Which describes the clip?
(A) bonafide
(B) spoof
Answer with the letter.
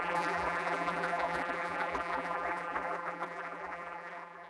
B